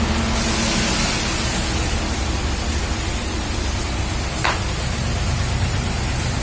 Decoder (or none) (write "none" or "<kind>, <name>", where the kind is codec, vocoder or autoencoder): none